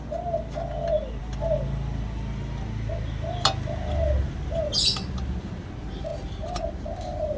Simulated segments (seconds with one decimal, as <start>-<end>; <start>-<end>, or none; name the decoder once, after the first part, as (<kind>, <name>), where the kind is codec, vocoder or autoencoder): none